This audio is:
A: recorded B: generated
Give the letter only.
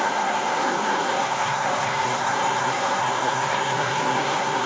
B